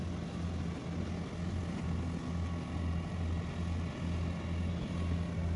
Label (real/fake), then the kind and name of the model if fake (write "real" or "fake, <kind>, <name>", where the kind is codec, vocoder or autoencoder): real